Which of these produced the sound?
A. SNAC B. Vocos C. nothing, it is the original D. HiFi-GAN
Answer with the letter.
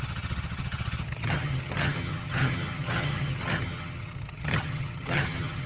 D